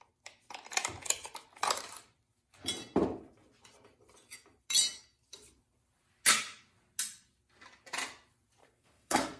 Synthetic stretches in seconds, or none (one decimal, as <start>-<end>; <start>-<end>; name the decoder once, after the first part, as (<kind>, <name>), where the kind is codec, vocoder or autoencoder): 8.6-9.4 (codec, SNAC)